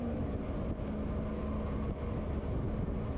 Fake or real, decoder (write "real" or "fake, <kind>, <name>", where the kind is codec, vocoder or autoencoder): real